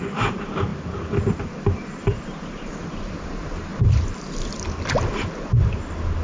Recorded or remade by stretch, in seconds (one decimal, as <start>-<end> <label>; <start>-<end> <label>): 0.0-6.2 remade